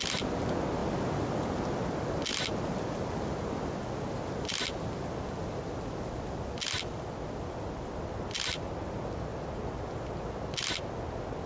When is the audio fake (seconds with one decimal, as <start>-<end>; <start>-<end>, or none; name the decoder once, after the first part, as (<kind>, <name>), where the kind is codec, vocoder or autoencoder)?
none